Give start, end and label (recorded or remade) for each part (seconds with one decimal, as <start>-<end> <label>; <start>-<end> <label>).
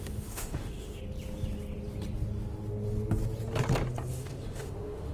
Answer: 0.0-1.0 remade; 1.0-4.1 recorded; 4.1-5.1 remade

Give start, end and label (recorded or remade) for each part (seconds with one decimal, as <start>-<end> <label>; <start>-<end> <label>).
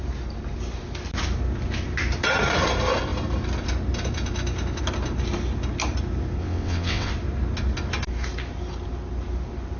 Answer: 0.0-6.4 recorded; 6.4-7.1 remade; 7.1-9.8 recorded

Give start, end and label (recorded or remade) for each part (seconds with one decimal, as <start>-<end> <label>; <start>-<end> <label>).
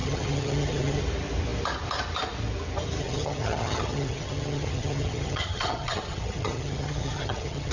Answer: 0.0-1.0 remade; 1.0-3.0 recorded; 3.0-7.7 remade